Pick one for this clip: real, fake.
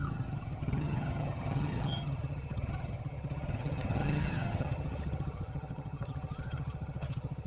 fake